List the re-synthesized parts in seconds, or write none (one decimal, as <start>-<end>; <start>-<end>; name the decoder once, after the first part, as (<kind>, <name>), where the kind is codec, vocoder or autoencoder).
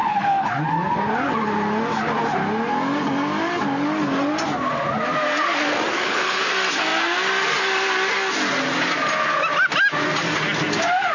0.0-0.5 (codec, HILCodec); 5.9-6.4